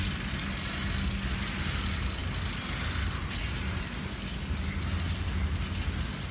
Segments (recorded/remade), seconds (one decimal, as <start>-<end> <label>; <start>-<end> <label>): 0.0-6.3 recorded

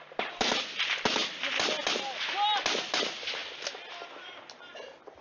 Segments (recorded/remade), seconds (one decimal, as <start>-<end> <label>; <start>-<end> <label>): 0.0-5.2 recorded

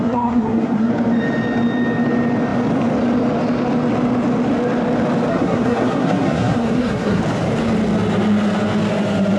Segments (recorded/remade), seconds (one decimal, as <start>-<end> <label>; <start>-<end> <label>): 0.0-0.9 remade; 0.9-5.3 recorded; 5.3-7.2 remade; 7.2-9.4 recorded

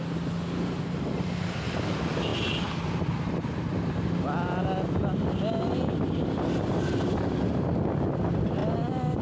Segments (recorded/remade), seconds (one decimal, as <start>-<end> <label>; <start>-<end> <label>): 0.0-9.2 recorded

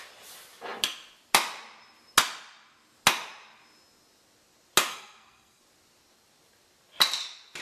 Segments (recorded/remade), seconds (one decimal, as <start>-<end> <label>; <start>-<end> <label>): 0.0-4.9 recorded; 4.9-5.6 remade; 5.6-7.6 recorded